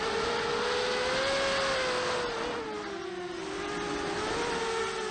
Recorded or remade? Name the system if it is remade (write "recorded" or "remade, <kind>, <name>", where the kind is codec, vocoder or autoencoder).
recorded